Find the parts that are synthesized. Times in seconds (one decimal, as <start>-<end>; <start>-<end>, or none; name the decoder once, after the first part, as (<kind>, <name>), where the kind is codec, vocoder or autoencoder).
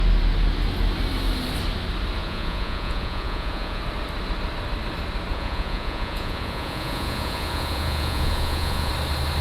2.2-3.8 (vocoder, Vocos); 5.3-8.9